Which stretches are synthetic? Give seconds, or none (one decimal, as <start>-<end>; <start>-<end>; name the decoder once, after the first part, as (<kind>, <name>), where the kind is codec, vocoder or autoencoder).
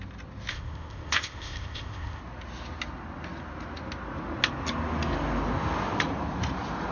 0.5-2.2 (codec, ZipCodec)